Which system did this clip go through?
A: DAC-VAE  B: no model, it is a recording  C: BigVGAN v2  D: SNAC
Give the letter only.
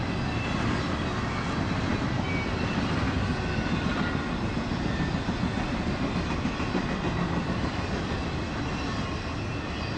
B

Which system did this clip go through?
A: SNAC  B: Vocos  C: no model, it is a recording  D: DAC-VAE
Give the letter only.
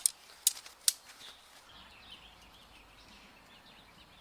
C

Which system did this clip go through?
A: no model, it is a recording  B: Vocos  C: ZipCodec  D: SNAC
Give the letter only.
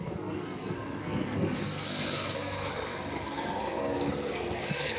D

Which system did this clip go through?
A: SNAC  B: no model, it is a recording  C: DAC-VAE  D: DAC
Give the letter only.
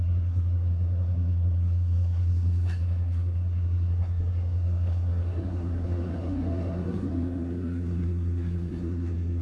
A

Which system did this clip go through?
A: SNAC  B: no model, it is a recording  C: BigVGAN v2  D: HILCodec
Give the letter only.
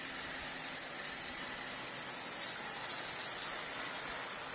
B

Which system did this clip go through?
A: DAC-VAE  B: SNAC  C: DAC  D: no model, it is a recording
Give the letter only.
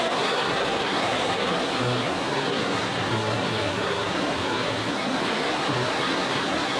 B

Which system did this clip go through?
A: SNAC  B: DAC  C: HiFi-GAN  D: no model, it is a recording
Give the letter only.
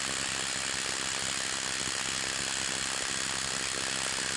D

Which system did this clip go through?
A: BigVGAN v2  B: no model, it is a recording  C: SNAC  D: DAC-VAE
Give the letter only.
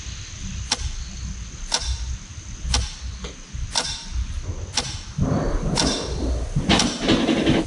B